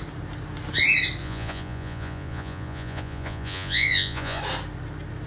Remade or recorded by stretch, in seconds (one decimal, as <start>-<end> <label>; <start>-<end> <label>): 0.0-1.2 recorded; 1.2-4.4 remade; 4.4-5.3 recorded